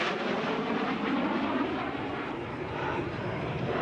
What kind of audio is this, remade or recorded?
recorded